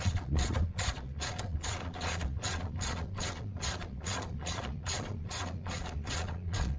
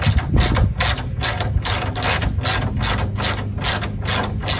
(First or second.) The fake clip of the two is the first